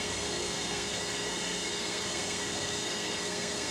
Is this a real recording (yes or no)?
no